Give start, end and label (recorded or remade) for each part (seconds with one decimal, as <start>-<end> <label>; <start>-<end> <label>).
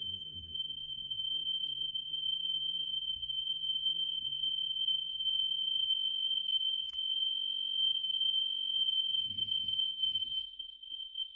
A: 0.0-11.4 remade